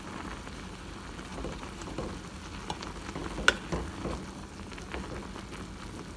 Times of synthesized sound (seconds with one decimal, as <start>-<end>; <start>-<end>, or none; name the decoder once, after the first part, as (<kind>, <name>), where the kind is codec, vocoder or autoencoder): 1.3-2.1 (vocoder, BigVGAN v2)